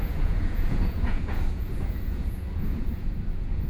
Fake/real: fake